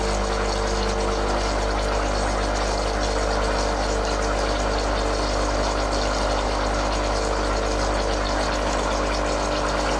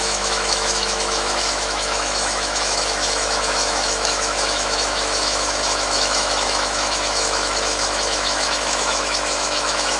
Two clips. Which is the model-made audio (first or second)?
second